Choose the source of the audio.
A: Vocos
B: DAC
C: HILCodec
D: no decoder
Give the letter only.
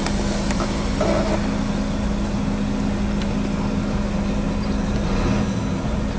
D